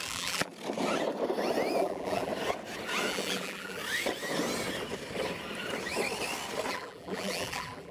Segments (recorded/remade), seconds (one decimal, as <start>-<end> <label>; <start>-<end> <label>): 0.0-0.5 remade; 0.5-1.8 recorded; 1.8-2.3 remade; 2.3-3.1 recorded; 3.1-3.8 remade; 3.8-6.7 recorded; 6.7-7.9 remade